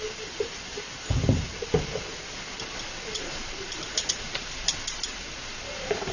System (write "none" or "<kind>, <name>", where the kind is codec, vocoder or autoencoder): none